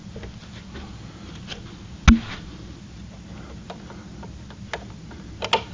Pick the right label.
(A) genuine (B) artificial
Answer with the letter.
A